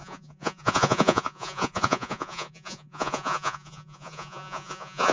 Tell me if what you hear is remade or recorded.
remade